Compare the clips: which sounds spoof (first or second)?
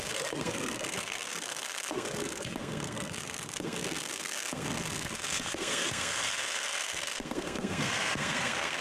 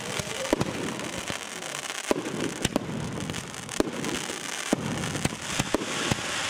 first